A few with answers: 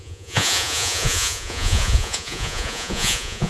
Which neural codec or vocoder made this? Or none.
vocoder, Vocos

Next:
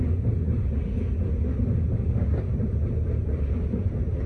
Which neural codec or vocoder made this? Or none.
none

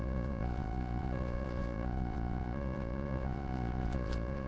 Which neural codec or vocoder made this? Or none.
vocoder, Vocos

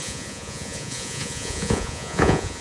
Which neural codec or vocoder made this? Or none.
vocoder, Vocos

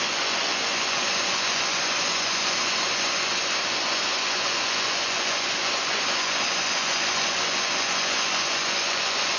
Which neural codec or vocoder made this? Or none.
vocoder, Vocos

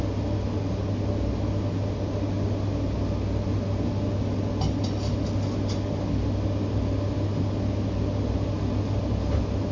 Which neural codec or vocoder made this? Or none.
none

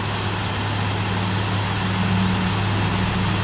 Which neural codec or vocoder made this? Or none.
none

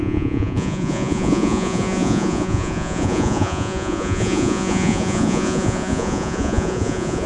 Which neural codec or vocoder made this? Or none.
vocoder, Vocos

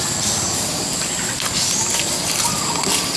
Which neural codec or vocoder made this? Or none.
none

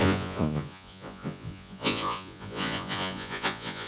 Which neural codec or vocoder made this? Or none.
vocoder, Vocos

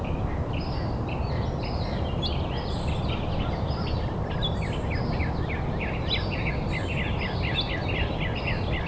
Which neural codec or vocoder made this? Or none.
none